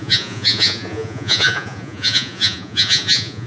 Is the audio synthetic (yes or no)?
yes